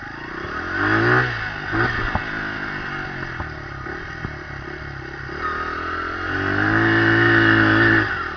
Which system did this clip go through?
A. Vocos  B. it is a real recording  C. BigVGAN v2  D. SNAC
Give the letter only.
B